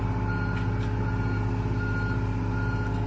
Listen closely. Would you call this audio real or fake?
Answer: real